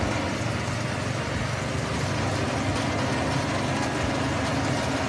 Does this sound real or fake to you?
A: real